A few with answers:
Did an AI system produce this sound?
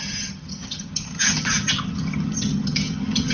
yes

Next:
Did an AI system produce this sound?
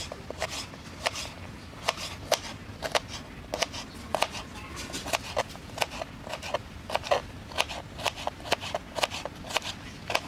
no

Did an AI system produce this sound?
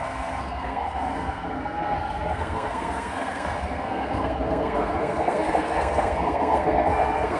yes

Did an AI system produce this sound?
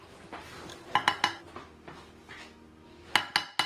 no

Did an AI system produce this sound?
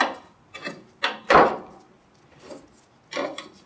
no